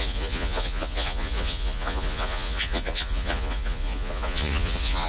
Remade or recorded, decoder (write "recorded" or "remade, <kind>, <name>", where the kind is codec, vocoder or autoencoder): remade, vocoder, Vocos